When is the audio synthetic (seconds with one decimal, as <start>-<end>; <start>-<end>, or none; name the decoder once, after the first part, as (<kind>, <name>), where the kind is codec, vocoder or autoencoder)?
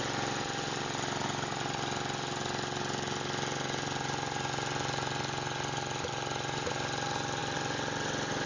7.4-8.5 (vocoder, BigVGAN v2)